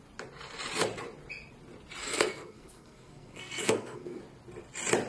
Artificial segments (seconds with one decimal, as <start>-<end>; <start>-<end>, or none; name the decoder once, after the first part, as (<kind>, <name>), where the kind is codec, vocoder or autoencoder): 2.0-4.2 (codec, SNAC)